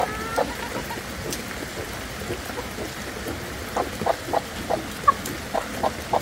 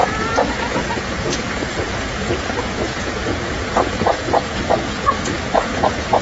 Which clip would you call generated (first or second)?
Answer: second